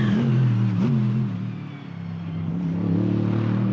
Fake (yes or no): no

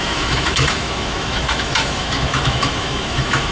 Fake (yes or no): yes